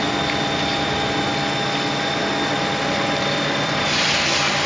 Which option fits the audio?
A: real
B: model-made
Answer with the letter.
A